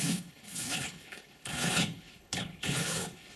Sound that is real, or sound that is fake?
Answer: fake